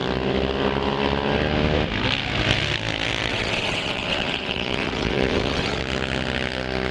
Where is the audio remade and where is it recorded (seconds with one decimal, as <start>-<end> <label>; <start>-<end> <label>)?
0.0-3.3 recorded; 3.3-5.8 remade; 5.8-6.9 recorded

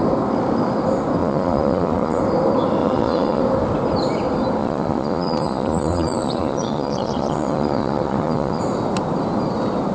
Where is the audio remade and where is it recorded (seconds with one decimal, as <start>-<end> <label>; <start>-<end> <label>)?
0.0-1.2 recorded; 1.2-2.2 remade; 2.2-2.8 recorded; 2.8-3.4 remade; 3.4-4.6 recorded; 4.6-8.6 remade; 8.6-9.9 recorded